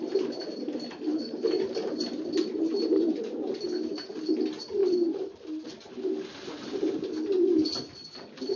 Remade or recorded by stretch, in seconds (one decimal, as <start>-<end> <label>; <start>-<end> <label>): 0.0-4.8 recorded; 4.8-5.7 remade; 5.7-8.6 recorded